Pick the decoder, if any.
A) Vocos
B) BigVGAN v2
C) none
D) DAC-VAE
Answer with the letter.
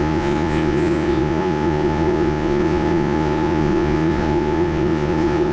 A